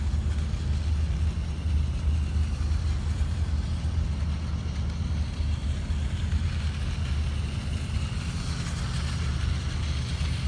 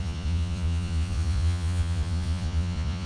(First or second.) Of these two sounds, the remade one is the second